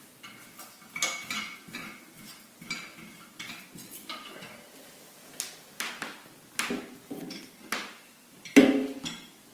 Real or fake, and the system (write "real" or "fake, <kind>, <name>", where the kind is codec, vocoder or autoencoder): real